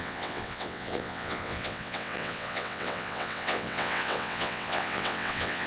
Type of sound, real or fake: fake